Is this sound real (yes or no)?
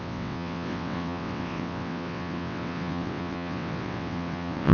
no